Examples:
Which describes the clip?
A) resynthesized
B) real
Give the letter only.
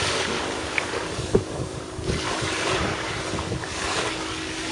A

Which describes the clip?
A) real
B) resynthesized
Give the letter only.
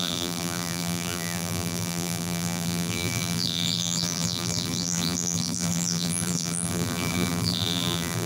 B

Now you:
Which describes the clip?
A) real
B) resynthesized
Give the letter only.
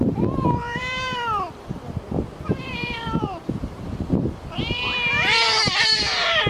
B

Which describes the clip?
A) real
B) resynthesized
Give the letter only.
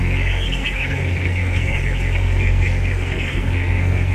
B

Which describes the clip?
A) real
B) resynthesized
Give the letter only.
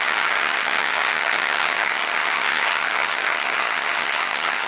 B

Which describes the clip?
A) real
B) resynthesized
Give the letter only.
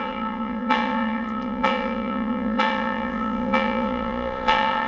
B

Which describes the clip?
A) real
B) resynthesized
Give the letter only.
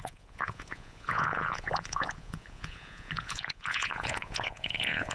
B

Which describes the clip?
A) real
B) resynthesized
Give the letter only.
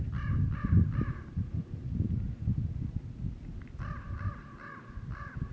A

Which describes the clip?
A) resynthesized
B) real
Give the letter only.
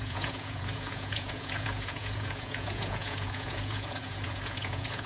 A